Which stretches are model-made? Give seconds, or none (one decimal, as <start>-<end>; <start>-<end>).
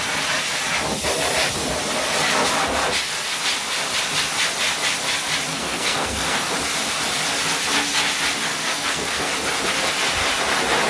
5.5-6.5; 8.5-9.3